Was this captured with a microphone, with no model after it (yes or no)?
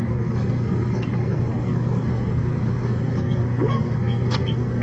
no